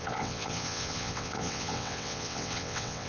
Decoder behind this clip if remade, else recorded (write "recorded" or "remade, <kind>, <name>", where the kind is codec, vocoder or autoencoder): remade, vocoder, WaveNeXt